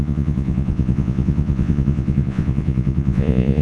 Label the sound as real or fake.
fake